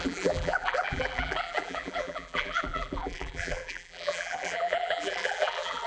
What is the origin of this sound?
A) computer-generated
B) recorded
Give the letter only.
A